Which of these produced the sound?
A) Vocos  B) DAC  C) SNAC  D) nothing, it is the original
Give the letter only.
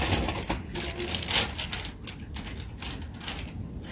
D